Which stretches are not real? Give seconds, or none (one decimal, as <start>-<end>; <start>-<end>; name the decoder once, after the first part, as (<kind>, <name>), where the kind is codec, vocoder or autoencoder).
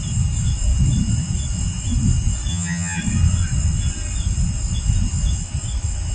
2.5-3.0 (vocoder, HiFi-GAN)